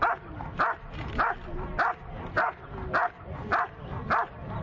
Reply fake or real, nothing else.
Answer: real